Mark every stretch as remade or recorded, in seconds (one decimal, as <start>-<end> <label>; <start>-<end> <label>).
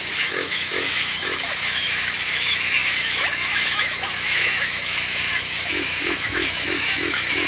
0.0-7.5 remade